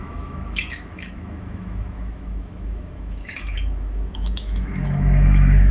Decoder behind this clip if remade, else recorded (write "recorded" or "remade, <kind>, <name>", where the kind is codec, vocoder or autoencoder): remade, autoencoder, DAC-VAE